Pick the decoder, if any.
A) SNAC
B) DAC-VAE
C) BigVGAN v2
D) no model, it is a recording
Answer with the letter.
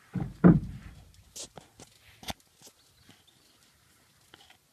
D